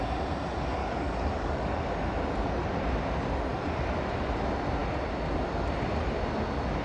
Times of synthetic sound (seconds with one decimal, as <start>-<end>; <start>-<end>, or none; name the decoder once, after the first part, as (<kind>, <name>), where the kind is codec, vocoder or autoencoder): 0.8-1.9 (codec, DAC)